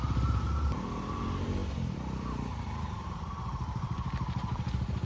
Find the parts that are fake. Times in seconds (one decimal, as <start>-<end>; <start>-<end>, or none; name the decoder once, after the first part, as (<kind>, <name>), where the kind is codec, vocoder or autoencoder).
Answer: 0.0-1.6 (vocoder, BigVGAN v2); 2.7-5.1